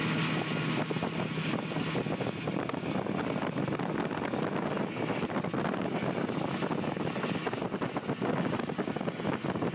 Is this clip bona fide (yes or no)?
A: yes